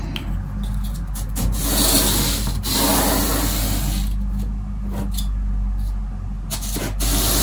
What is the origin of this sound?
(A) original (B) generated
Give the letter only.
A